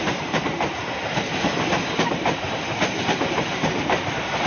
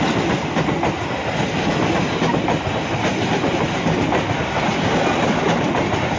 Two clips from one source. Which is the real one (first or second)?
second